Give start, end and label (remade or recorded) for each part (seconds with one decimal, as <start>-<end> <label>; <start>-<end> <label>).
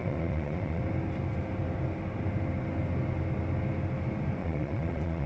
0.0-0.8 remade; 0.8-4.4 recorded; 4.4-5.3 remade